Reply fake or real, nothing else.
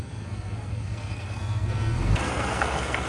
fake